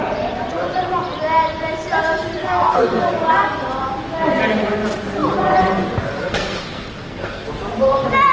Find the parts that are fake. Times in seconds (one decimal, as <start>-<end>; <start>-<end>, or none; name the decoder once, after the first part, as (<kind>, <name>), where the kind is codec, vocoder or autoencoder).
2.4-3.3 (codec, SNAC); 6.2-7.5